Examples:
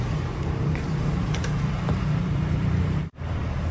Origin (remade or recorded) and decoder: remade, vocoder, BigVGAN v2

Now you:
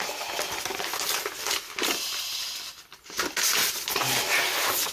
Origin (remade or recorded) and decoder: recorded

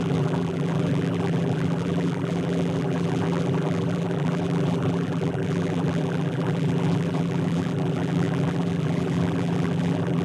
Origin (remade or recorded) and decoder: remade, vocoder, BigVGAN v2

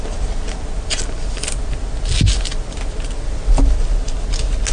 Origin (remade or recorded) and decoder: recorded